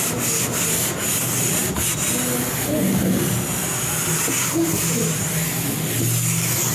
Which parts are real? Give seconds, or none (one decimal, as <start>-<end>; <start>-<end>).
0.0-6.7